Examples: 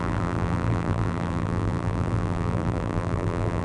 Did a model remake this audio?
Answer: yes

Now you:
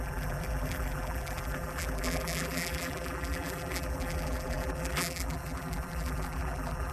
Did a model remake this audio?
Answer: yes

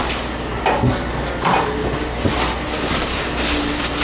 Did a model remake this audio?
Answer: no